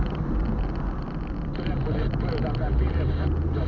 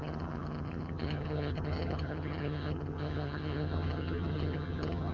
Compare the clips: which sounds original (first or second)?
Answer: first